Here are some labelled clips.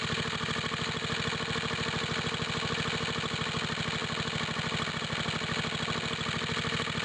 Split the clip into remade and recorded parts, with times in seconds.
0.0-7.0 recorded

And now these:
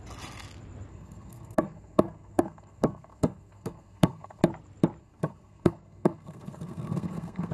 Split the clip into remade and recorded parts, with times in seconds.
0.0-0.9 recorded; 0.9-4.4 remade; 4.4-5.0 recorded; 5.0-7.5 remade

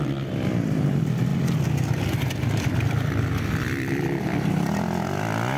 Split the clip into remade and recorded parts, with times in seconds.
0.0-1.3 remade; 1.3-2.8 recorded; 2.8-4.3 remade; 4.3-5.6 recorded

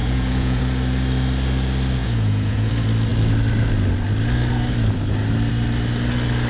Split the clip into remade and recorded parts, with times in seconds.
0.0-0.6 remade; 0.6-2.0 recorded; 2.0-2.7 remade; 2.7-6.5 recorded

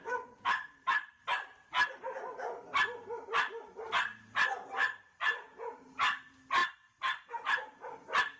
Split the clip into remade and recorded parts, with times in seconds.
0.0-8.4 recorded